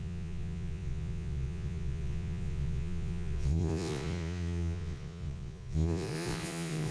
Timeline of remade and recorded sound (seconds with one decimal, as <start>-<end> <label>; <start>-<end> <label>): 0.0-6.9 remade